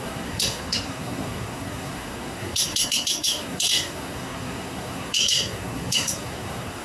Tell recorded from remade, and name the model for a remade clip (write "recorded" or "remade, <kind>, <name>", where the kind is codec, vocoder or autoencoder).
remade, codec, SNAC